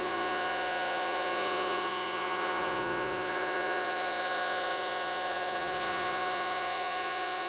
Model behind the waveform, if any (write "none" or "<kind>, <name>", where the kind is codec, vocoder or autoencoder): vocoder, Vocos